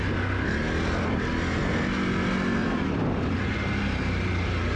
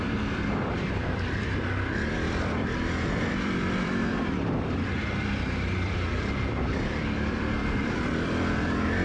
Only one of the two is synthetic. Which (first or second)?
second